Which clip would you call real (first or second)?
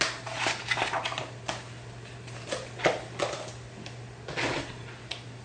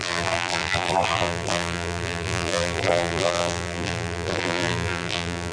first